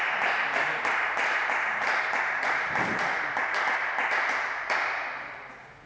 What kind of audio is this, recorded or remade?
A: recorded